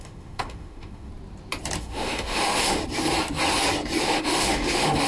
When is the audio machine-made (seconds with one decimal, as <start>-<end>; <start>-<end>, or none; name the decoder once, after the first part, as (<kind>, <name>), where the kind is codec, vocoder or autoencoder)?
0.0-1.1 (autoencoder, DAC-VAE); 1.8-2.8; 4.0-5.1